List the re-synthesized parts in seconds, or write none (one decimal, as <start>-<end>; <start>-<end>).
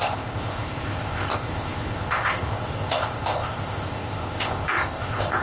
0.0-5.4